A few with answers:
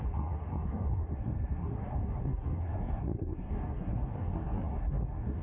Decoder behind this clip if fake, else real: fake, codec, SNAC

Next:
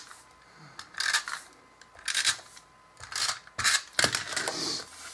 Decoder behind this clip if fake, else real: real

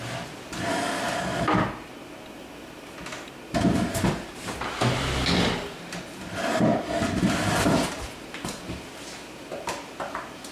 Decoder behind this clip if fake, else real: real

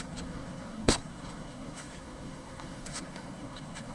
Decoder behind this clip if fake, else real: fake, codec, SNAC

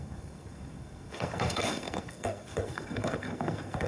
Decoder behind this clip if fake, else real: fake, codec, SNAC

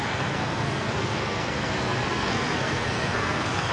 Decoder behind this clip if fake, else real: fake, codec, SNAC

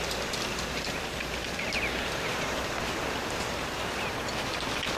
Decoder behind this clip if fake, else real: real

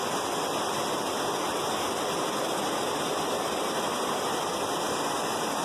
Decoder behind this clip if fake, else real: real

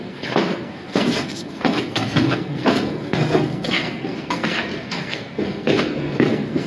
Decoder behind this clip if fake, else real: fake, codec, SNAC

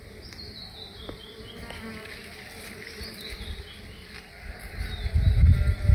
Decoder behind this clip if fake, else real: real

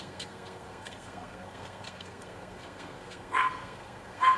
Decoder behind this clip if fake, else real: fake, codec, SNAC